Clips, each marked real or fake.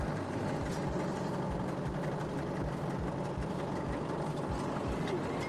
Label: real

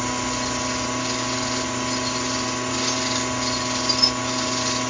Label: real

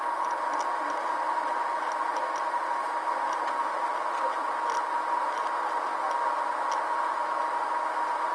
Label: real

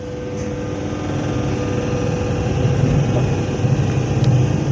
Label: real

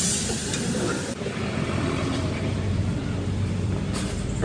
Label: fake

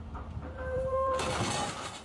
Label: fake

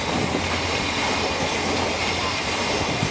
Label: real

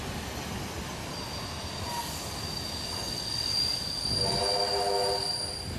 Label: real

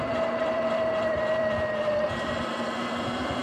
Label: fake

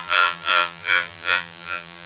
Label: fake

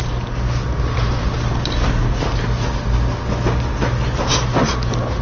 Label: real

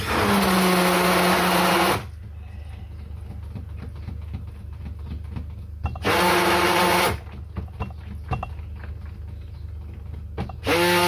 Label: real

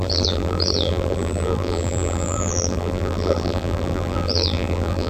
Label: fake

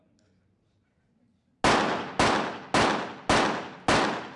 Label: real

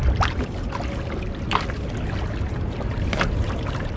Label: real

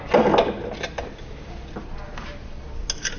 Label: real